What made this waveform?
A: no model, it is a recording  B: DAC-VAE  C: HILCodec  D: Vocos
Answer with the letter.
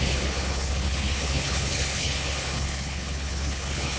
C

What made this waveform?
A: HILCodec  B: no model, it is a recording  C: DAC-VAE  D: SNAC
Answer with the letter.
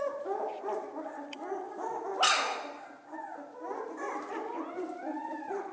B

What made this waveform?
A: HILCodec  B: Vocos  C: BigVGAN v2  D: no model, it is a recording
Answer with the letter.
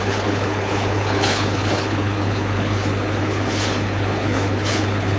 A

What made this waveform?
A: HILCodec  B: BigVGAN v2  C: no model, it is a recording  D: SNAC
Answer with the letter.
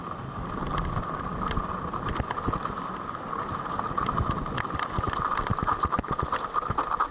C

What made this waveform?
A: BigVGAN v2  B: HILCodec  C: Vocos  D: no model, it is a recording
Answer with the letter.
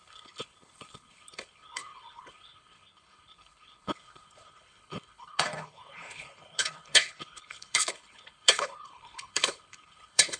B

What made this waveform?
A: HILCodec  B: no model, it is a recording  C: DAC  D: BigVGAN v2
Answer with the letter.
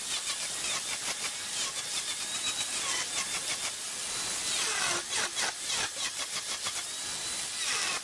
B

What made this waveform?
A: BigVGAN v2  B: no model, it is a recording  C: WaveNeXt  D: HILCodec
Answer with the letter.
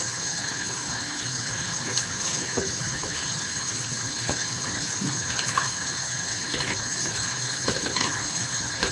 D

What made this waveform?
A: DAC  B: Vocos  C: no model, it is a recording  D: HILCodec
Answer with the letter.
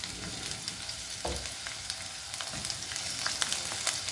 C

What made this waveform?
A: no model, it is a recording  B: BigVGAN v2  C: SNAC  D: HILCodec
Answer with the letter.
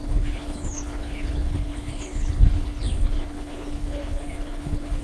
D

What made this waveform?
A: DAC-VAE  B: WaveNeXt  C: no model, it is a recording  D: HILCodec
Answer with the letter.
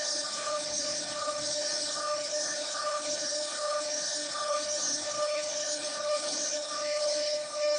D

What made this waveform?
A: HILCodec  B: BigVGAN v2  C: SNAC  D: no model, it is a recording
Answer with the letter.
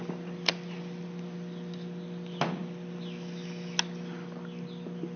D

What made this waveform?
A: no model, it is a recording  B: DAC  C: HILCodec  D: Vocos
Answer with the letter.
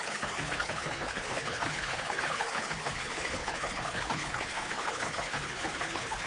C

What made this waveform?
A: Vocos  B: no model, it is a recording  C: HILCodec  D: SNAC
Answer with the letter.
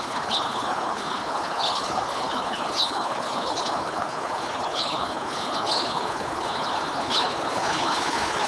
C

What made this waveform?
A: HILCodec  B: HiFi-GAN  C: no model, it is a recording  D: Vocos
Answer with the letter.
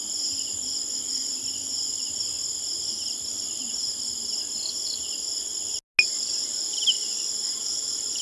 C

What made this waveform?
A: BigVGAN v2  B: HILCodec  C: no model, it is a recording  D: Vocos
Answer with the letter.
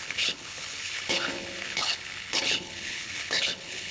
B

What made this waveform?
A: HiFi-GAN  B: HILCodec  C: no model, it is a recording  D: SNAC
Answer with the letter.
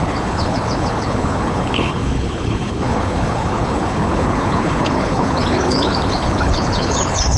B